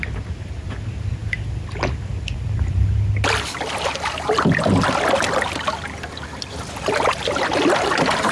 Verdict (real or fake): real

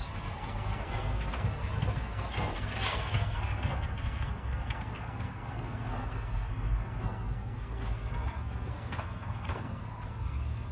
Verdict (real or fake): fake